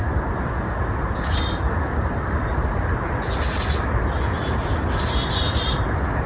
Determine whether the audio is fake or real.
real